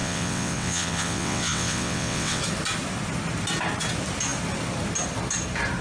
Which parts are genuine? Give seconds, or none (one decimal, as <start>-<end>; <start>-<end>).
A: 2.4-5.8